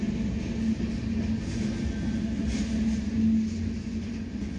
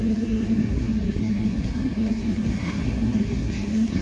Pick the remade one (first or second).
second